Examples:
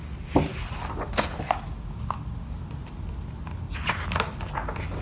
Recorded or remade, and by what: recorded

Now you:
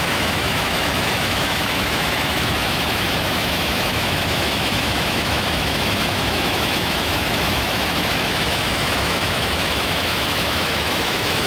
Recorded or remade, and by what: remade, autoencoder, DAC-VAE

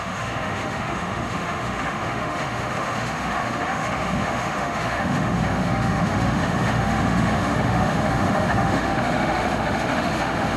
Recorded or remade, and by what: remade, autoencoder, DAC-VAE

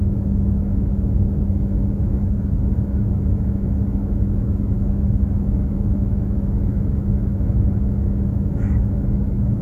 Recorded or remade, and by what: remade, autoencoder, DAC-VAE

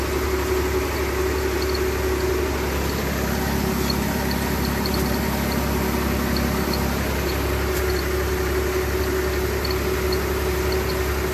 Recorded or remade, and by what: recorded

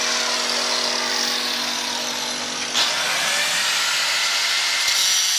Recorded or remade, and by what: recorded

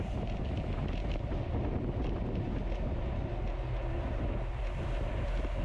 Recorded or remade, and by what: recorded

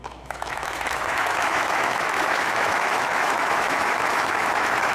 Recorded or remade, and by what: remade, autoencoder, DAC-VAE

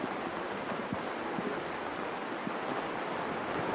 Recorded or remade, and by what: recorded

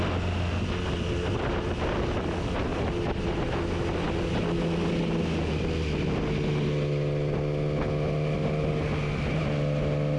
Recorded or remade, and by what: recorded